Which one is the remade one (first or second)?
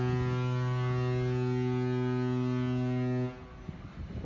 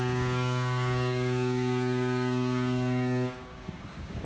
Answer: second